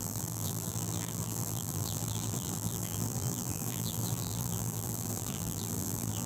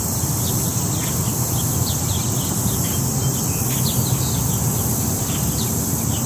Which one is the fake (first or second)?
first